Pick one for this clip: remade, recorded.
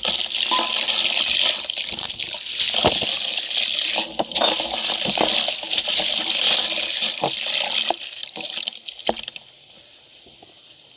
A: recorded